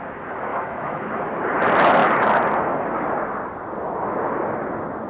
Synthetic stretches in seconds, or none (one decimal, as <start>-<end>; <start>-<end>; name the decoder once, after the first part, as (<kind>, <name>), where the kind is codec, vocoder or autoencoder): 0.5-1.1 (autoencoder, DAC-VAE)